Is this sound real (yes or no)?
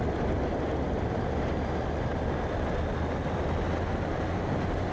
yes